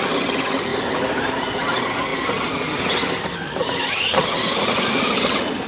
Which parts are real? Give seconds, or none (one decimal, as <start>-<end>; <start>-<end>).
0.0-0.7; 1.6-3.6